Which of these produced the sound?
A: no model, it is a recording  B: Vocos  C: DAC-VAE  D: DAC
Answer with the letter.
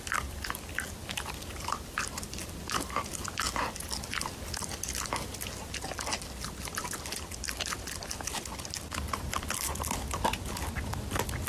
A